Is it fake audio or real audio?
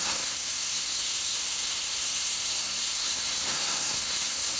fake